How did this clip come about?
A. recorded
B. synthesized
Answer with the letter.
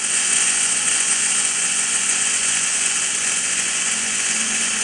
B